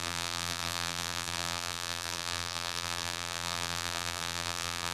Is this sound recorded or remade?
remade